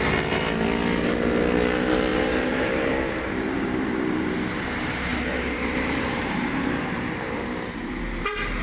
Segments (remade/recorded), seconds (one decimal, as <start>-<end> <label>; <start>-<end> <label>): 0.0-2.1 recorded; 2.1-4.6 remade; 4.6-5.1 recorded; 5.1-8.0 remade; 8.0-8.6 recorded